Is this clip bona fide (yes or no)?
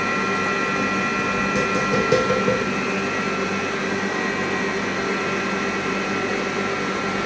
yes